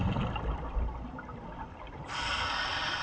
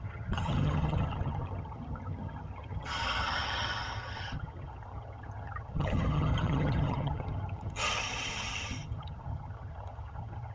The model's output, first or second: second